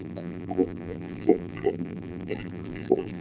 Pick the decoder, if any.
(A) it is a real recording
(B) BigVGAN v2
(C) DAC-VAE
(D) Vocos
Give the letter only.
B